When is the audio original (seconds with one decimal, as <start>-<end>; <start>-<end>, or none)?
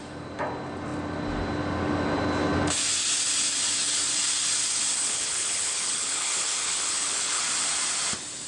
0.0-5.0; 7.4-8.5